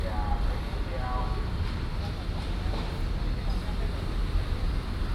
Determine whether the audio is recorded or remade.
recorded